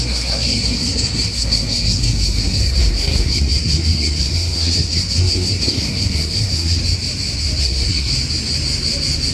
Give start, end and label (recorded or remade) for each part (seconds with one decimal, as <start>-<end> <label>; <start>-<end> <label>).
0.0-6.8 remade; 6.8-7.6 recorded; 7.6-8.1 remade; 8.1-9.3 recorded